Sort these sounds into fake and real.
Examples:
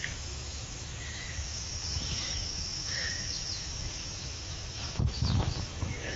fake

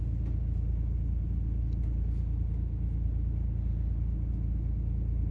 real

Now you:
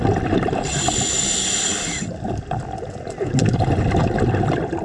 real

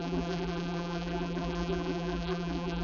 fake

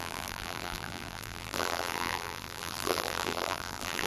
fake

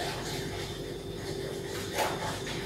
real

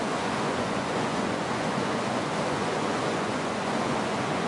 fake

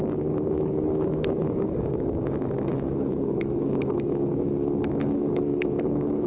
fake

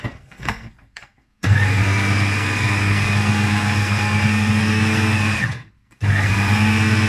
fake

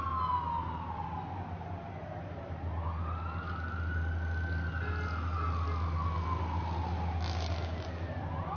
real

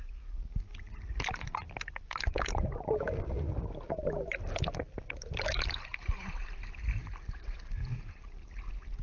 real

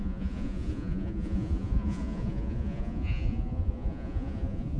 fake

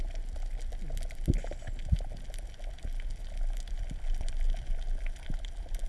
real